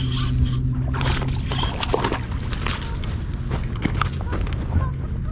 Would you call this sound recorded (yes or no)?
yes